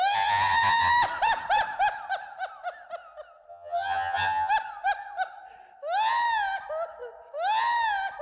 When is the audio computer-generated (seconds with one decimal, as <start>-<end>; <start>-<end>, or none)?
3.5-4.5